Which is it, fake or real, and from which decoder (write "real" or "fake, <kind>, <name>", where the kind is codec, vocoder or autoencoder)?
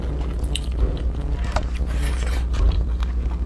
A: real